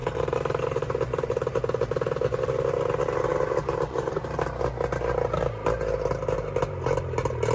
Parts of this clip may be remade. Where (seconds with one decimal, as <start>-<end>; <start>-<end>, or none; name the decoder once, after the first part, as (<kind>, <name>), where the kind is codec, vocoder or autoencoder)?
0.0-2.5 (vocoder, BigVGAN v2); 3.3-4.4